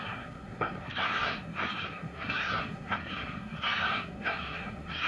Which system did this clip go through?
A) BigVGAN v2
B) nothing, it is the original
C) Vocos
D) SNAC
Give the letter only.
D